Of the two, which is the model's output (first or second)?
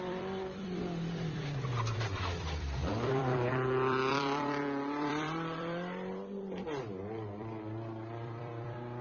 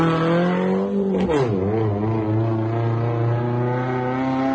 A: first